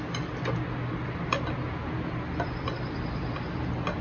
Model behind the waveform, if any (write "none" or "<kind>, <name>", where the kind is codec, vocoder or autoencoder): none